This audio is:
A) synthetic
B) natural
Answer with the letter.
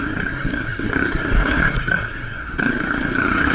A